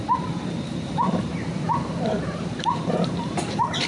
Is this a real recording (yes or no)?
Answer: no